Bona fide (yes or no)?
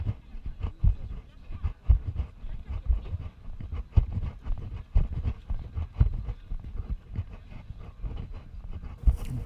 yes